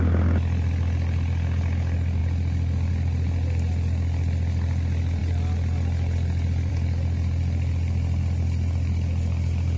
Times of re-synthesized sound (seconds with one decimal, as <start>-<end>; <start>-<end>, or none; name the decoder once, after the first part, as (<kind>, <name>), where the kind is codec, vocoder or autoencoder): none